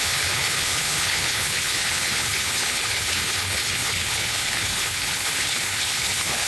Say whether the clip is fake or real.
fake